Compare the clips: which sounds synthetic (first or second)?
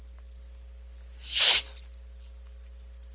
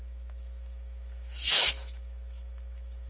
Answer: second